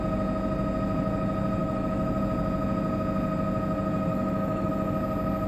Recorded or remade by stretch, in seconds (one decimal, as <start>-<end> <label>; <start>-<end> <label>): 0.0-1.6 recorded; 1.6-2.2 remade; 2.2-4.1 recorded; 4.1-4.7 remade; 4.7-5.5 recorded